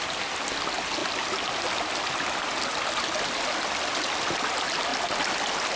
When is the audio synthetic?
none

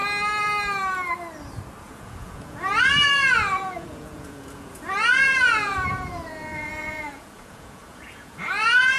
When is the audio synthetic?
1.8-9.0

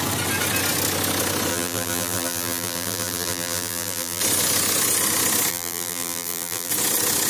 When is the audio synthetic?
1.5-4.2; 5.5-6.7